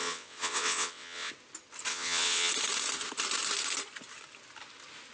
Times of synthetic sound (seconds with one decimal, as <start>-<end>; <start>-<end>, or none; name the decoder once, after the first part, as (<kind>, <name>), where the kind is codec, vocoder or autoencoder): 0.0-1.3 (vocoder, WaveNeXt); 1.9-2.5